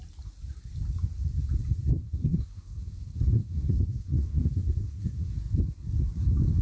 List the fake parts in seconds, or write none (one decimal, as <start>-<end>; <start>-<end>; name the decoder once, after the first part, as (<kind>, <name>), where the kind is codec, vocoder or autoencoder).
2.0-5.3 (codec, SNAC)